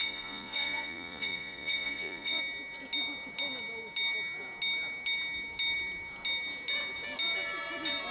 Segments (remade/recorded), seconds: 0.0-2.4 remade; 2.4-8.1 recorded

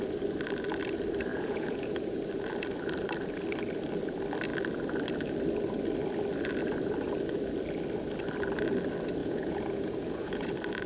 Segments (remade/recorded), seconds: 0.0-1.3 recorded; 1.3-2.2 remade; 2.2-9.2 recorded; 9.2-10.5 remade; 10.5-10.9 recorded

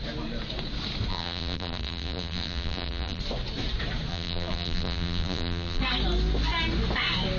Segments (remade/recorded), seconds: 0.0-1.1 recorded; 1.1-3.2 remade; 3.2-4.1 recorded; 4.1-5.8 remade; 5.8-7.4 recorded

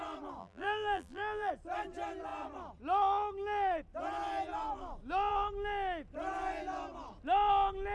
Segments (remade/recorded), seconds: 0.0-0.4 recorded; 0.4-1.5 remade; 1.5-7.9 recorded

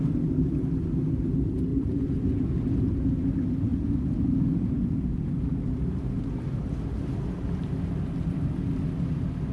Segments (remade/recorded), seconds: 0.0-1.7 recorded; 1.7-2.4 remade; 2.4-3.7 recorded; 3.7-5.6 remade; 5.6-9.5 recorded

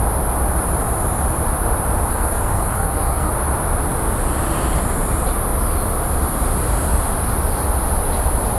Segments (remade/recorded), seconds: 0.0-2.1 recorded; 2.1-3.3 remade; 3.3-8.6 recorded

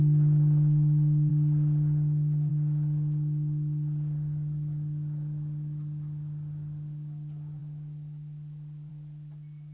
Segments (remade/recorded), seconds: 0.0-9.7 recorded

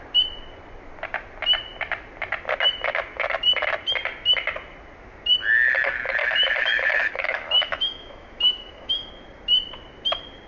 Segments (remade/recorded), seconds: 0.0-6.2 recorded; 6.2-9.1 remade; 9.1-10.5 recorded